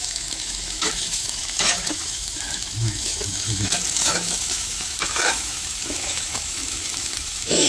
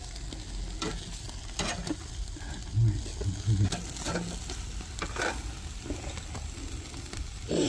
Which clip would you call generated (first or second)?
first